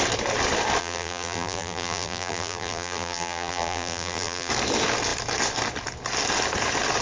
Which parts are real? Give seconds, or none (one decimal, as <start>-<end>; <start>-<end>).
0.0-0.8; 4.5-7.0